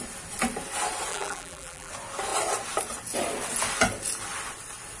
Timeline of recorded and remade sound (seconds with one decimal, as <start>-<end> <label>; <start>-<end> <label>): 0.0-1.1 recorded; 1.1-1.9 remade; 1.9-5.0 recorded